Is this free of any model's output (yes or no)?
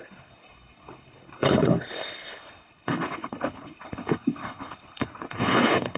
no